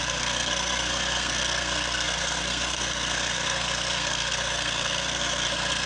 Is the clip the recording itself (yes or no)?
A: no